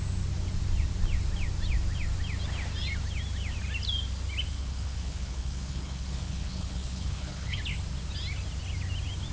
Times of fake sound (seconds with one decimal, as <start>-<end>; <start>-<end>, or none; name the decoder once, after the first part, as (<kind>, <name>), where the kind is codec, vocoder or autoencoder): 4.5-7.6 (codec, HILCodec)